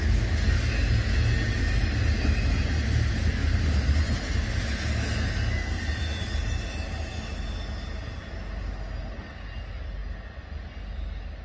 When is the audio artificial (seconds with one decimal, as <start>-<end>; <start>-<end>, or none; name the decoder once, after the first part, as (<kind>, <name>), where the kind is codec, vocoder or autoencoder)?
none